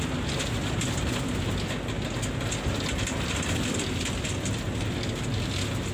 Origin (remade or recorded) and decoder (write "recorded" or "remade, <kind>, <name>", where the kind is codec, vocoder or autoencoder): recorded